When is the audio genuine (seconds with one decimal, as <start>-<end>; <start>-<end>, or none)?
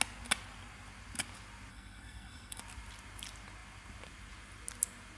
0.0-1.7; 2.6-5.2